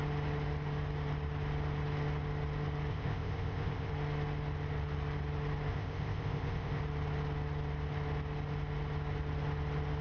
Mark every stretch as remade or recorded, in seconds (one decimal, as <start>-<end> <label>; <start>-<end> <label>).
0.0-2.9 recorded; 2.9-3.9 remade; 3.9-5.7 recorded; 5.7-6.8 remade; 6.8-10.0 recorded